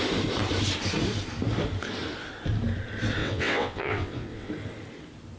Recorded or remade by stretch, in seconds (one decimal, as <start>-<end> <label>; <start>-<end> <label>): 0.0-3.2 recorded; 3.2-4.5 remade; 4.5-5.4 recorded